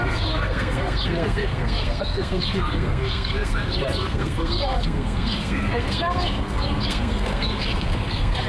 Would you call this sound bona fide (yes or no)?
no